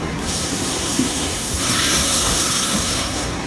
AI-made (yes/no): yes